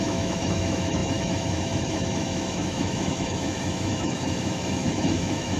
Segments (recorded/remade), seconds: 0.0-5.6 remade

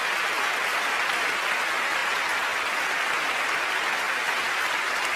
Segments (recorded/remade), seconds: 0.0-5.2 recorded